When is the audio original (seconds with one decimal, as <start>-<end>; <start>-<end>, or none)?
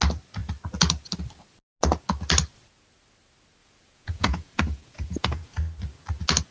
0.0-3.6; 5.6-6.5